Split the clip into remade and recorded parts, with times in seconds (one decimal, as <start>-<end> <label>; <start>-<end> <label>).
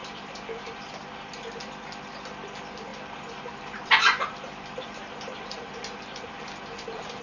0.0-1.4 remade; 1.4-2.9 recorded; 2.9-7.2 remade